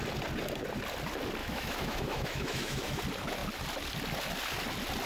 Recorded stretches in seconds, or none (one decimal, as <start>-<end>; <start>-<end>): 0.0-1.4; 3.0-5.1